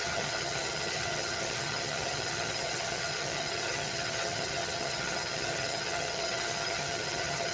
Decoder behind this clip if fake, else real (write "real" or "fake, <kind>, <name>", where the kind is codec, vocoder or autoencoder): fake, vocoder, HiFi-GAN